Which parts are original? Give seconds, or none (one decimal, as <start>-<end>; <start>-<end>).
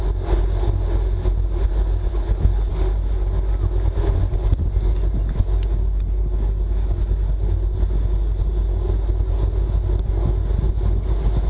0.0-2.1; 2.7-11.5